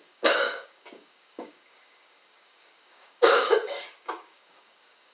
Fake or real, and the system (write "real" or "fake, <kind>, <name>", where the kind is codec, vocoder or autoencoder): fake, codec, DAC